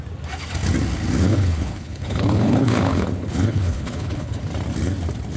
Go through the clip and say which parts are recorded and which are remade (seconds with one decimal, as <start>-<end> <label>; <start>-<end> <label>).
0.0-1.2 recorded; 1.2-4.4 remade; 4.4-5.4 recorded